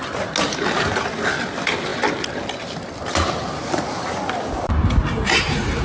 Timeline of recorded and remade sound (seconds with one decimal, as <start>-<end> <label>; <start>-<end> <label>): 0.0-5.8 recorded

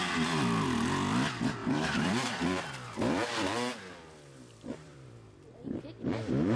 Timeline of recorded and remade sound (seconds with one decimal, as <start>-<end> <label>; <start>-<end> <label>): 0.0-1.6 recorded; 1.6-5.6 remade; 5.6-6.6 recorded